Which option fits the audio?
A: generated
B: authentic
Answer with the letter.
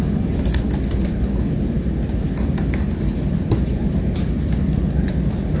B